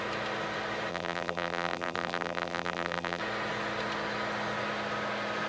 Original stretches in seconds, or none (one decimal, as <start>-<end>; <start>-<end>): 0.0-0.9; 3.2-5.5